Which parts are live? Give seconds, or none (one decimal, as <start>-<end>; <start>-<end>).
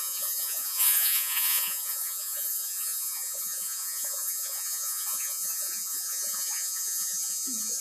none